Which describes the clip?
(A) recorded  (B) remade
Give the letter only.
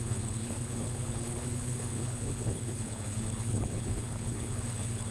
B